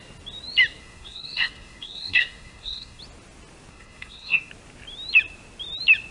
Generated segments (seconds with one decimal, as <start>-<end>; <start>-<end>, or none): 0.8-3.0; 3.7-4.5